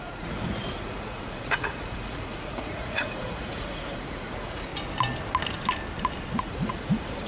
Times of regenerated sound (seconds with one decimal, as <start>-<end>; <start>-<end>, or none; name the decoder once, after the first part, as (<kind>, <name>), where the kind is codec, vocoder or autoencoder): 0.0-4.7 (vocoder, Vocos); 6.4-7.3